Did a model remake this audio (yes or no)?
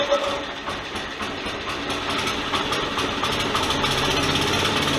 no